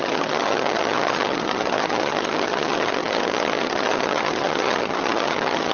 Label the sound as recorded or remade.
remade